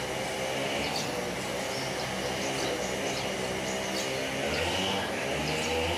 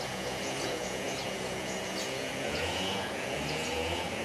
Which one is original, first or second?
first